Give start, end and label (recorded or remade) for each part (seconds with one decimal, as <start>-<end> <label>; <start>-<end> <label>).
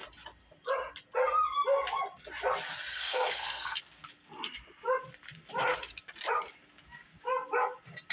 0.0-2.9 recorded; 2.9-3.8 remade; 3.8-8.1 recorded